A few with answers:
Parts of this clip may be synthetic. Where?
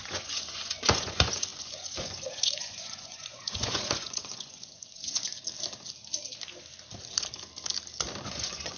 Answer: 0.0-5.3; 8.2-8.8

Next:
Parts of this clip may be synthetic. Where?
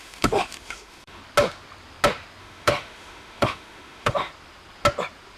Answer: 0.0-1.2; 2.4-4.3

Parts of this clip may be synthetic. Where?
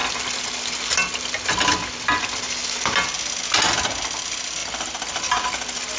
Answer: none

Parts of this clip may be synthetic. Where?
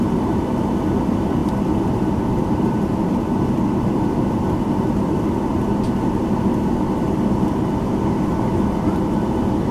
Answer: 1.4-6.0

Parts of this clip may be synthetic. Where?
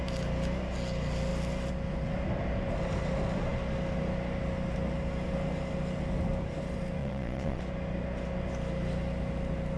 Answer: 7.0-7.6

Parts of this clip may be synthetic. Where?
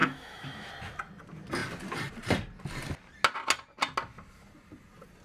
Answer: 0.0-0.7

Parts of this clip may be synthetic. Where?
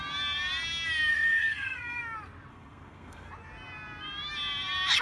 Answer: 1.1-2.0; 2.5-3.3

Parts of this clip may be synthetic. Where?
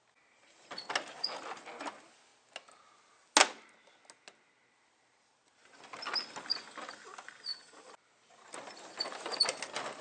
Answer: none